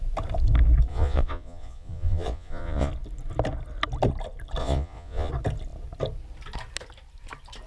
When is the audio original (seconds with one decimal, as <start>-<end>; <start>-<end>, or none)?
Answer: 0.0-0.9; 2.9-4.6; 5.3-7.7

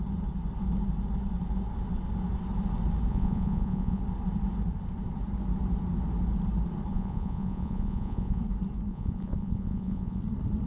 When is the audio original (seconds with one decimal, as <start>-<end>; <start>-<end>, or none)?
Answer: 0.0-3.1; 4.0-6.9; 8.4-8.9; 10.2-10.7

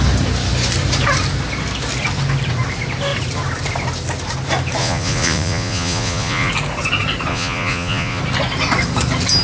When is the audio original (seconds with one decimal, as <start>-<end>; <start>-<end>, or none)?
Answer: 0.0-4.8; 6.5-7.3; 8.2-9.4

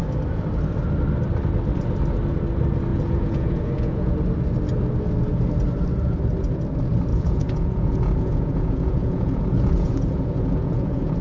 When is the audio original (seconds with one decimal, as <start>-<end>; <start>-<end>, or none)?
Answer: 0.0-2.9; 4.1-7.1

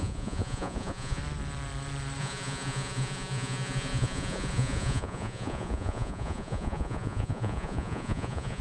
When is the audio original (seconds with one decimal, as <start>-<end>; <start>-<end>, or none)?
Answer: 1.2-2.2

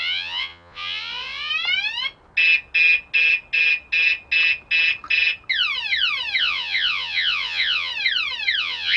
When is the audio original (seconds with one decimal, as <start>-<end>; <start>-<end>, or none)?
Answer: 1.5-6.4; 7.9-8.6